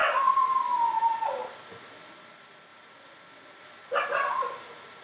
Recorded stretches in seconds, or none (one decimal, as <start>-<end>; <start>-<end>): 0.0-5.0